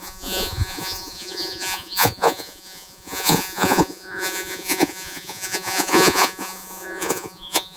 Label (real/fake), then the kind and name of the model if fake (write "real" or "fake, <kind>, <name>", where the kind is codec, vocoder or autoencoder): fake, vocoder, Vocos